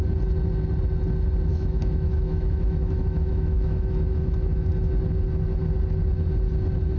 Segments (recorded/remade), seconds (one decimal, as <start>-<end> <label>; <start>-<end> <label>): 0.0-1.5 recorded; 1.5-4.7 remade; 4.7-7.0 recorded